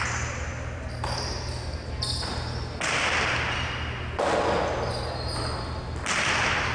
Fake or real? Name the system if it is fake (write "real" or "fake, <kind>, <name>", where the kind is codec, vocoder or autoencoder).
real